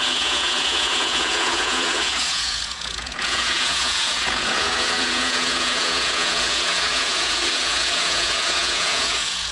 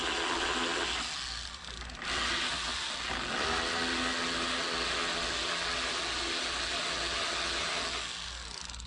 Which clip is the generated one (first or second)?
first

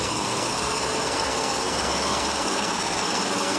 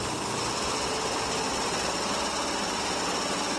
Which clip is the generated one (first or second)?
first